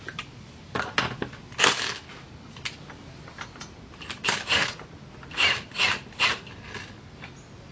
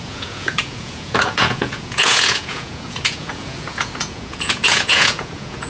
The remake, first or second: second